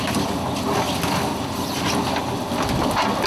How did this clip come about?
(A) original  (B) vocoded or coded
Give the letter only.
A